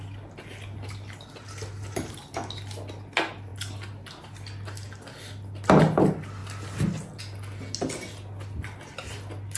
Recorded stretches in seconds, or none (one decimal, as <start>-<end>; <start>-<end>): 0.0-9.6